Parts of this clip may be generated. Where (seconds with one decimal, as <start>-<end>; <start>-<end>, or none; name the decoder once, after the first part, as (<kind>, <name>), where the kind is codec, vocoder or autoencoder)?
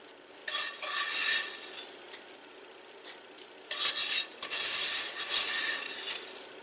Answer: 4.9-5.7 (vocoder, Vocos)